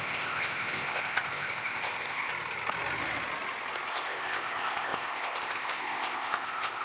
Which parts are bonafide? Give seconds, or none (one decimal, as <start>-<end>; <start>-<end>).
2.3-3.9